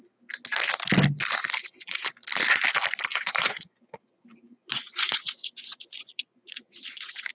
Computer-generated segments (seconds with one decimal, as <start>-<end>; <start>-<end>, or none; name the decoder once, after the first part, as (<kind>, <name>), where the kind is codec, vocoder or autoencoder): 1.6-2.1 (vocoder, Vocos); 3.1-7.3